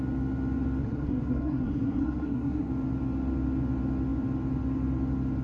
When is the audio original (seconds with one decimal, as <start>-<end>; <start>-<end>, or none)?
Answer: 0.0-0.8; 2.7-5.4

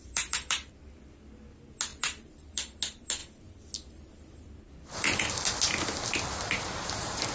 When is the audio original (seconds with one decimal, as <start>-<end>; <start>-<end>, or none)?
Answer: 0.7-1.9; 2.8-7.3

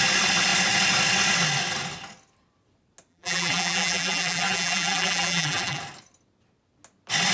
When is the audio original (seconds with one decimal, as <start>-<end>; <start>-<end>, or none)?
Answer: 0.0-3.1; 5.8-7.3

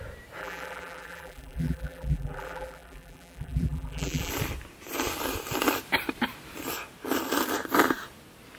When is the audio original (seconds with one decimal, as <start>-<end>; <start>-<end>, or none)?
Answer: 0.0-0.4; 4.3-8.6

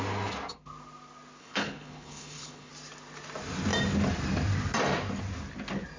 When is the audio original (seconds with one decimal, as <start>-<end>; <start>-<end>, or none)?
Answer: 0.0-1.4; 2.7-6.0

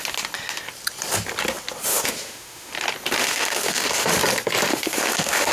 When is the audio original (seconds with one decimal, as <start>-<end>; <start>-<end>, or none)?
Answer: 0.0-1.9; 2.7-3.2; 4.1-4.7